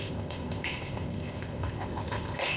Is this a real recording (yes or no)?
no